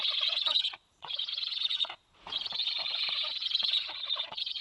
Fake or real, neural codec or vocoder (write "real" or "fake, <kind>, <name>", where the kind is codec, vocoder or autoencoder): fake, vocoder, Vocos